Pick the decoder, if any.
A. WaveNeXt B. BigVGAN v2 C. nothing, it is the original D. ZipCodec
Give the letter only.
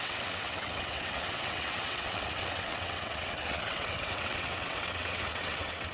A